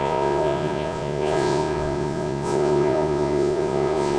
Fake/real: fake